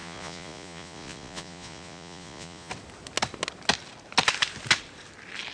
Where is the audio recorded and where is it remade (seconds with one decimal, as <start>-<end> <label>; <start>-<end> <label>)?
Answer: 0.0-2.7 remade; 2.7-5.5 recorded

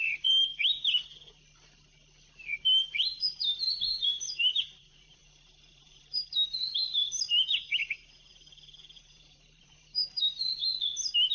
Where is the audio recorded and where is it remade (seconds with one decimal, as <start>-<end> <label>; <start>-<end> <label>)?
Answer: 0.0-0.5 remade; 0.5-2.8 recorded; 2.8-10.6 remade; 10.6-11.3 recorded